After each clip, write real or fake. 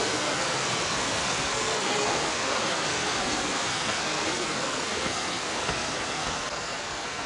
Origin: fake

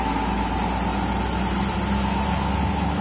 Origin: real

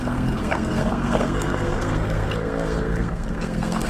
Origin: fake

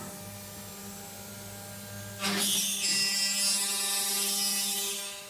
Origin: real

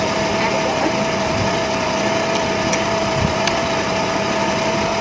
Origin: real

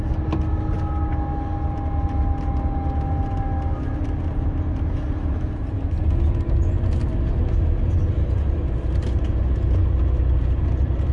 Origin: real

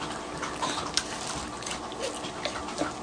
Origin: real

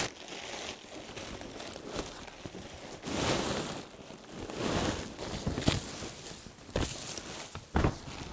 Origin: real